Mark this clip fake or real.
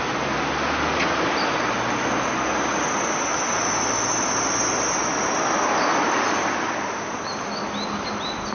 real